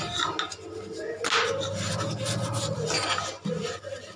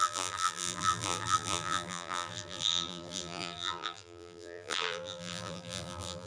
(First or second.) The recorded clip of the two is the first